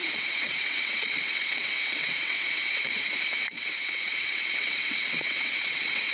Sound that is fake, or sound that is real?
fake